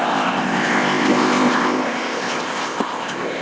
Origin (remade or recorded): remade